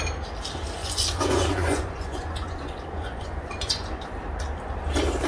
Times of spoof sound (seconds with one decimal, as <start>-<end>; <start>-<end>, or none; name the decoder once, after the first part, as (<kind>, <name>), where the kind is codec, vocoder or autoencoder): 0.8-4.0 (vocoder, Vocos)